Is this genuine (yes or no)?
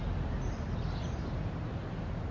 no